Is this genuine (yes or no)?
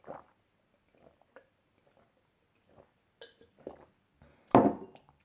yes